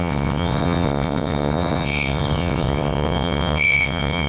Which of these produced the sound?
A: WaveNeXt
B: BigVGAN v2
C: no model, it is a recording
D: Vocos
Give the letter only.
A